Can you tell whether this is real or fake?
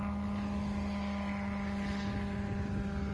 real